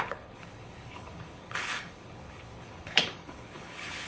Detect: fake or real fake